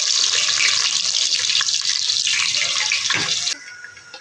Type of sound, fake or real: real